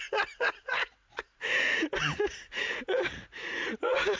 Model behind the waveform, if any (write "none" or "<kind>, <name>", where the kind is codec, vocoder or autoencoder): vocoder, Vocos